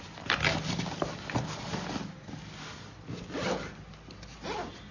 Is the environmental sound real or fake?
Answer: real